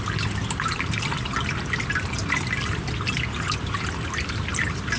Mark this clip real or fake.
real